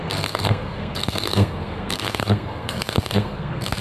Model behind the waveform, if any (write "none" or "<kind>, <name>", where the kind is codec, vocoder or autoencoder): codec, SNAC